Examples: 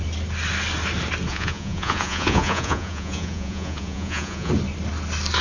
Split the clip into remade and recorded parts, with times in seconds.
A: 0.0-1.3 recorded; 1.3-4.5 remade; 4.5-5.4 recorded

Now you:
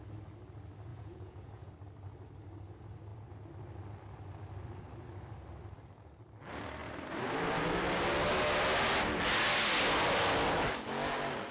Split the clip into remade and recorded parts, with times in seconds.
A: 0.0-0.9 recorded; 0.9-1.7 remade; 1.7-11.5 recorded

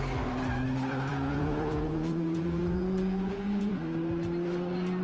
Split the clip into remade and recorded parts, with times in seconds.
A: 0.0-1.1 recorded; 1.1-3.7 remade; 3.7-5.0 recorded

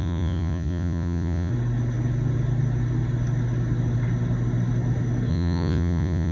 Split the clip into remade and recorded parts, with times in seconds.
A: 0.0-1.5 remade; 1.5-5.3 recorded; 5.3-6.3 remade

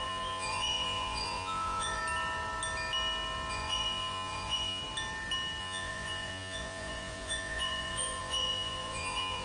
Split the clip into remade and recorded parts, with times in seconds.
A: 0.0-2.0 remade; 2.0-3.5 recorded; 3.5-4.8 remade; 4.8-5.6 recorded; 5.6-9.4 remade